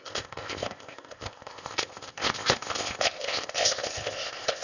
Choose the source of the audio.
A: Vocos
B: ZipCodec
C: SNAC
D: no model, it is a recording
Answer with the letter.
B